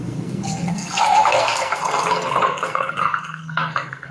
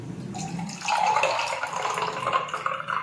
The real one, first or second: second